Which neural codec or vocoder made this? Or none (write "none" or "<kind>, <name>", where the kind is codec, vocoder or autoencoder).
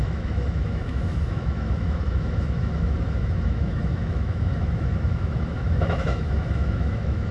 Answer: autoencoder, DAC-VAE